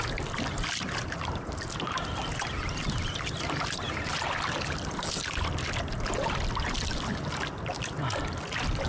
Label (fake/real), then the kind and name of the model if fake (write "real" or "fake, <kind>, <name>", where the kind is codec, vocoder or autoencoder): real